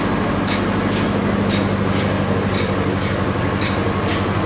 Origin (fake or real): real